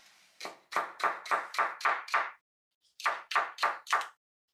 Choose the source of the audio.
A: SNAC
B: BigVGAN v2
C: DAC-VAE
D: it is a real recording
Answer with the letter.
B